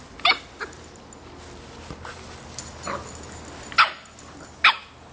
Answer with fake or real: real